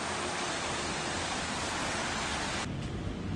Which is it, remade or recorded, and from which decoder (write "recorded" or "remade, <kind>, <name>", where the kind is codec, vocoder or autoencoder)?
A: recorded